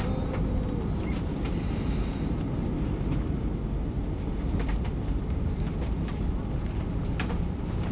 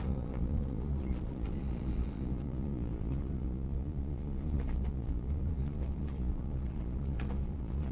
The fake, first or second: second